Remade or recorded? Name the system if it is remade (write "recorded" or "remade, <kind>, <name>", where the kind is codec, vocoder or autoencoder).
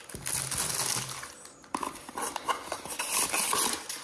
recorded